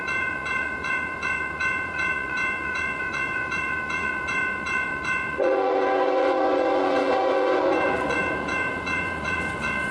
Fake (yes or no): yes